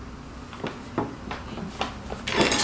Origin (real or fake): real